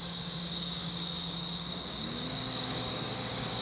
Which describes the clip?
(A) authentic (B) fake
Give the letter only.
B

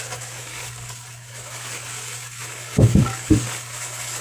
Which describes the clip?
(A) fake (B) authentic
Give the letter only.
A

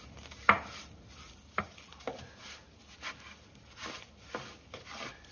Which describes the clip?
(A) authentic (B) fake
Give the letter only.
A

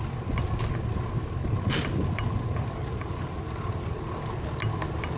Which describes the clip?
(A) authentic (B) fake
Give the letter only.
A